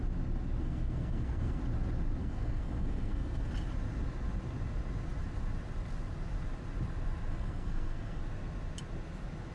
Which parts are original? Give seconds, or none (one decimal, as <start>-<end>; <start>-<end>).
0.0-0.6; 1.6-2.2; 3.5-7.3; 8.2-9.5